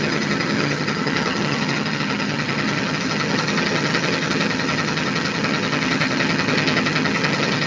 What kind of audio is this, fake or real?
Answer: fake